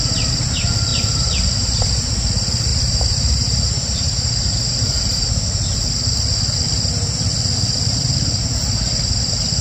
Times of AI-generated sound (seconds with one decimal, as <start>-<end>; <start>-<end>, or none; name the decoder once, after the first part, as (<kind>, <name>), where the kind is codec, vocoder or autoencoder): 0.9-2.1 (vocoder, BigVGAN v2); 2.7-5.3